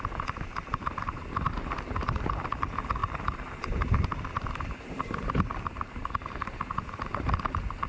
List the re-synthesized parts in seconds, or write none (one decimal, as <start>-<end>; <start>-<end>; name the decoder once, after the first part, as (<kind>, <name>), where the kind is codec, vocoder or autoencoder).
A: 3.0-5.4 (vocoder, BigVGAN v2)